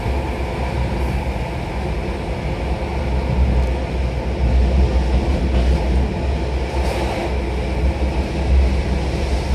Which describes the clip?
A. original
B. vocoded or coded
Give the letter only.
A